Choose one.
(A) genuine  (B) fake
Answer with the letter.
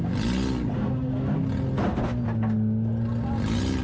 A